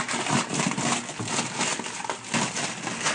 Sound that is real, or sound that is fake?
real